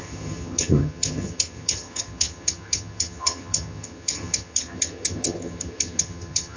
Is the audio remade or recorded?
remade